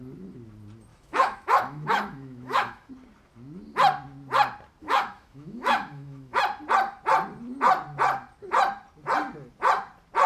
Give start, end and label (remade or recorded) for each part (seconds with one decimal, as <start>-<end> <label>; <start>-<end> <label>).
0.0-0.9 recorded; 0.9-2.9 remade; 2.9-4.8 recorded; 4.8-6.4 remade; 6.4-10.3 recorded